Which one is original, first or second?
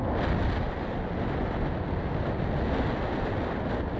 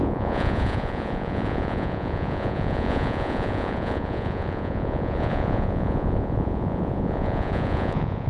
first